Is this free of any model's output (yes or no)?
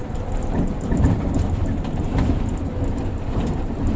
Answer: yes